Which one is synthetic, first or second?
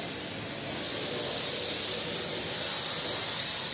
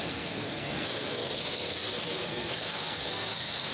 second